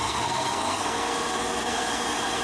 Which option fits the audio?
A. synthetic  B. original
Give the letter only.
A